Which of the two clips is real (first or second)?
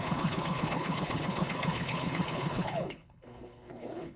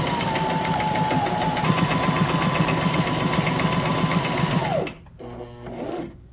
second